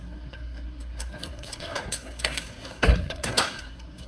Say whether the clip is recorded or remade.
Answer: remade